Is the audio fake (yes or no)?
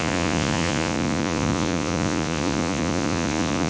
yes